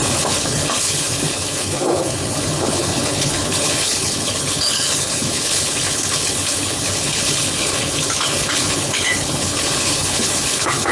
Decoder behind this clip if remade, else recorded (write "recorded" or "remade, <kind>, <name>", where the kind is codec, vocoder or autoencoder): remade, codec, HILCodec